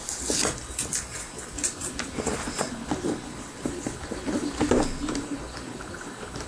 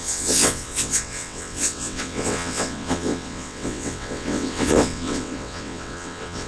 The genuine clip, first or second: first